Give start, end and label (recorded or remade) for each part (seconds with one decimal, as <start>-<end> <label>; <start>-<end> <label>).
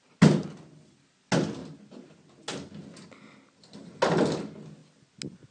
0.0-5.5 recorded